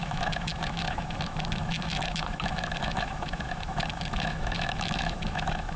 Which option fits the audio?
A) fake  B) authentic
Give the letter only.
A